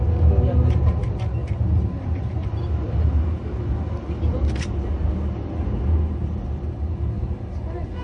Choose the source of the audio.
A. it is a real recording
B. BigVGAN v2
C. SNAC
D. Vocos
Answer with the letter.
A